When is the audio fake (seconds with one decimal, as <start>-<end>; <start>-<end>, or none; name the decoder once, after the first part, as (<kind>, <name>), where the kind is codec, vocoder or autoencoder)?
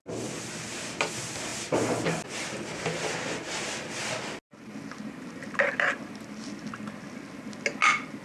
none